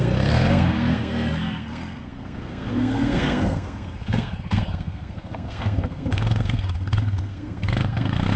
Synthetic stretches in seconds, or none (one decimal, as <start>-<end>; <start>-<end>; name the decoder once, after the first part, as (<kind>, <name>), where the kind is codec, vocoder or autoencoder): 0.0-8.4 (codec, SNAC)